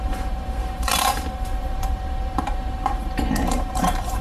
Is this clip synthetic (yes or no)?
yes